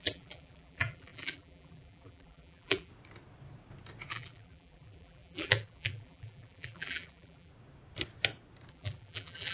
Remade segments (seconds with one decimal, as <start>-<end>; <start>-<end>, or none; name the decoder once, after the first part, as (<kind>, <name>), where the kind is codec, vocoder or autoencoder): 0.0-2.9 (vocoder, BigVGAN v2); 4.1-7.5; 8.7-9.5